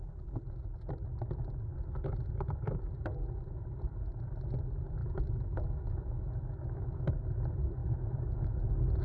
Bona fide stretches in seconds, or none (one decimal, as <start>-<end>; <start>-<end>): 0.0-1.7; 2.5-5.0; 7.1-7.8; 8.6-9.0